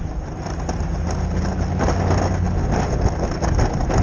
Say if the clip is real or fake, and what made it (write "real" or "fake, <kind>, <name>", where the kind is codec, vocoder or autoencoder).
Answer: real